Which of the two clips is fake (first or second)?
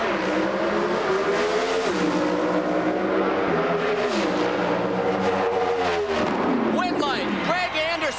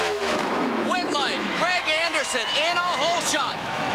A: second